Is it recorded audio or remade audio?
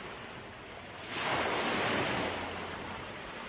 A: recorded